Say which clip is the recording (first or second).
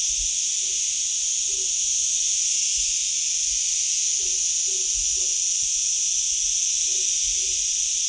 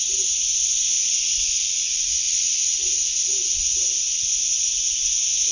first